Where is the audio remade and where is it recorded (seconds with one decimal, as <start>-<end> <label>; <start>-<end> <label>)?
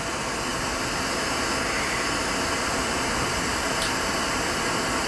0.0-5.1 recorded